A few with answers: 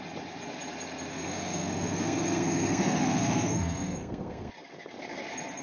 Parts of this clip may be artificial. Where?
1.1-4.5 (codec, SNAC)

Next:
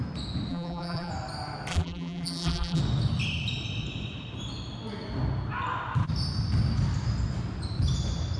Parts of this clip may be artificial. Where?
0.5-1.1 (vocoder, BigVGAN v2); 1.7-2.8

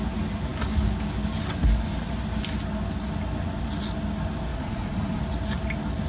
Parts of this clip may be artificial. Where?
4.5-5.2 (vocoder, Vocos)

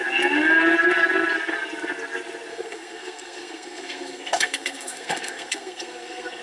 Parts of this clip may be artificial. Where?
2.5-6.4 (codec, SNAC)

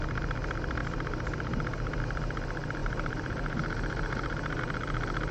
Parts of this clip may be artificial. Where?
0.8-2.0 (vocoder, BigVGAN v2); 2.8-4.6

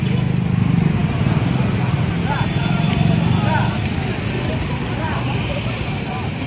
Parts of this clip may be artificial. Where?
none

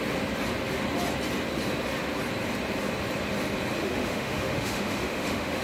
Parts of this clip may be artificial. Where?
3.8-5.6 (autoencoder, DAC-VAE)